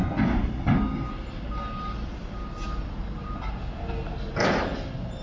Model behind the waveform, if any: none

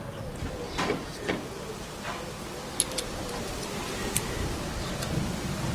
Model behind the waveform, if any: none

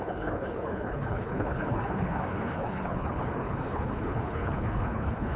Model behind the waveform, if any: codec, HILCodec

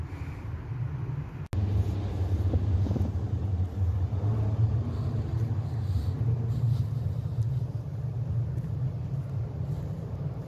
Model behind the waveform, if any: none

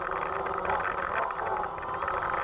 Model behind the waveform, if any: none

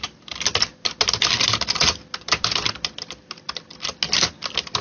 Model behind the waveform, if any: none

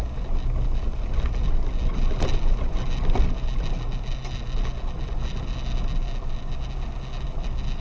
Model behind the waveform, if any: none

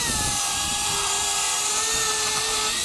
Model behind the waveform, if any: none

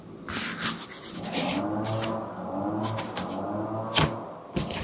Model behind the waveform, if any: none